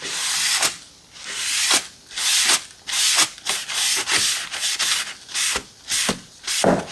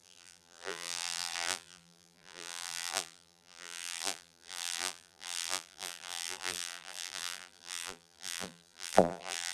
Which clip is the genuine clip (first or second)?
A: first